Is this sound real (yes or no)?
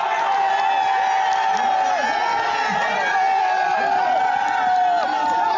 yes